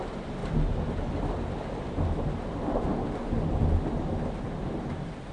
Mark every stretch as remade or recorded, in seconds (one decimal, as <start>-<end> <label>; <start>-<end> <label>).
0.0-0.4 remade; 0.4-1.7 recorded; 1.7-2.9 remade; 2.9-4.0 recorded; 4.0-5.3 remade